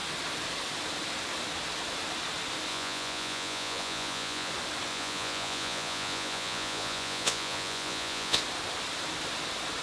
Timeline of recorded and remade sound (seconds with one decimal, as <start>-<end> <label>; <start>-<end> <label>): 0.0-2.7 recorded; 2.7-4.5 remade; 4.5-4.9 recorded; 4.9-8.4 remade; 8.4-9.8 recorded